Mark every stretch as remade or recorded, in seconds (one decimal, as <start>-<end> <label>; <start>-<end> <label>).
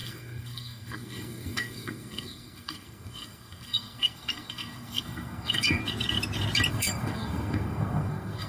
0.0-5.8 remade; 5.8-6.7 recorded; 6.7-8.5 remade